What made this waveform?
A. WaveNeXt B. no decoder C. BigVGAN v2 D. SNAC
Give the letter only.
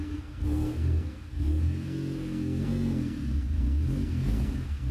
D